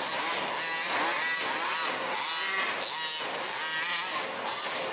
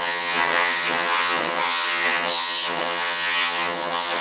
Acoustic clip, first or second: first